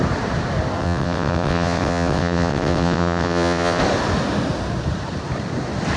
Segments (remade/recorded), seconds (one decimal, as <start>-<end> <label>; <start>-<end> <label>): 0.0-0.8 recorded; 0.8-3.8 remade; 3.8-6.0 recorded